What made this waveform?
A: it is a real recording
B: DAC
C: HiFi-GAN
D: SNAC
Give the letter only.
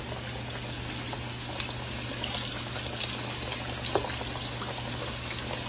A